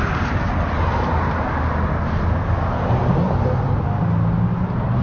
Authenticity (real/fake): real